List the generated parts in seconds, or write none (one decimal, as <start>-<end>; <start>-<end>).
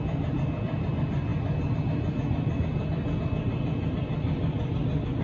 none